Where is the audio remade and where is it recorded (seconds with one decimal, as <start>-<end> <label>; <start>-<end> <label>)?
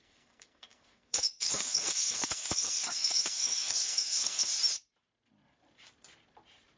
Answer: 0.0-4.5 remade; 4.5-6.8 recorded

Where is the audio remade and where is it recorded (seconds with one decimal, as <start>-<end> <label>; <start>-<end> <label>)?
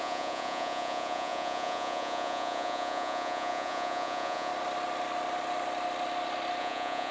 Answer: 0.0-4.5 remade; 4.5-6.6 recorded; 6.6-7.1 remade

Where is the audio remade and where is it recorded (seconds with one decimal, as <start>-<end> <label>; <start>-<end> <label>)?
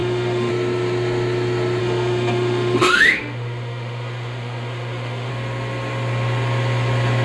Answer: 0.0-0.5 remade; 0.5-1.8 recorded; 1.8-5.3 remade; 5.3-7.2 recorded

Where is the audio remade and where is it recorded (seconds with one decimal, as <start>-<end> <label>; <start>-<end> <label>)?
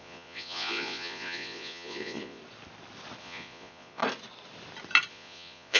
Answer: 0.0-2.4 remade; 2.4-3.2 recorded; 3.2-4.0 remade; 4.0-5.1 recorded; 5.1-5.8 remade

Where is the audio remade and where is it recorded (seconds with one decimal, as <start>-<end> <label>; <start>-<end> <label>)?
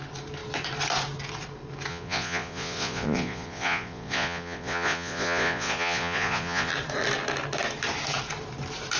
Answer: 0.0-1.9 recorded; 1.9-6.7 remade; 6.7-9.0 recorded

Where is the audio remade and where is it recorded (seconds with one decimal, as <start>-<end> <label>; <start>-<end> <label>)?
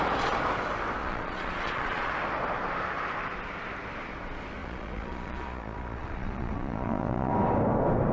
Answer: 0.0-1.0 recorded; 1.0-2.1 remade; 2.1-4.6 recorded; 4.6-7.3 remade; 7.3-8.1 recorded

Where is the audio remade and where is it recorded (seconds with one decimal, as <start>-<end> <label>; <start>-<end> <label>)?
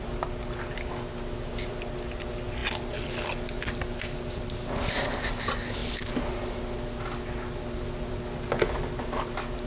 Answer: 0.0-9.7 recorded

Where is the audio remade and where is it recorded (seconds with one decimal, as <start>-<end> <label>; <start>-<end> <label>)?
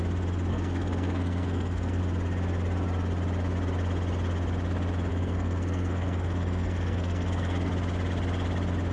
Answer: 0.0-0.5 recorded; 0.5-2.0 remade; 2.0-5.1 recorded; 5.1-7.7 remade; 7.7-8.9 recorded